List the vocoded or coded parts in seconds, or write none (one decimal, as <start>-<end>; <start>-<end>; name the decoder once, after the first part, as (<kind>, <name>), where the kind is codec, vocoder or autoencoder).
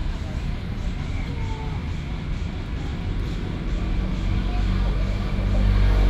0.0-1.3 (vocoder, BigVGAN v2); 1.8-2.5